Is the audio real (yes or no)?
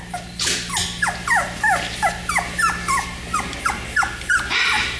yes